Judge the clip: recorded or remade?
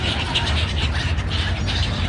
recorded